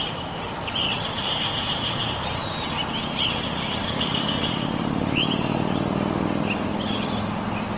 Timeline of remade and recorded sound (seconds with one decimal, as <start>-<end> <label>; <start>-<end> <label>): 0.0-3.8 recorded; 3.8-4.5 remade; 4.5-7.8 recorded